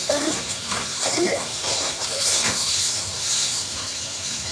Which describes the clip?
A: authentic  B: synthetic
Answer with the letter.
B